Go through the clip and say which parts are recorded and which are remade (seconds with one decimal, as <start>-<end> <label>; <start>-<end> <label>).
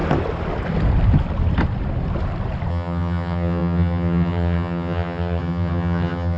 0.0-2.7 recorded; 2.7-6.4 remade